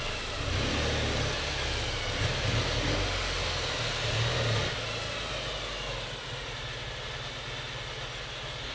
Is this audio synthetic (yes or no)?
no